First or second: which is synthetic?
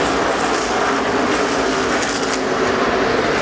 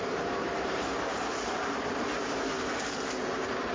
second